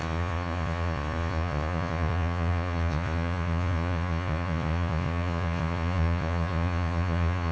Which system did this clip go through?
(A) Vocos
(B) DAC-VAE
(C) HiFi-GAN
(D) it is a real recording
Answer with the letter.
A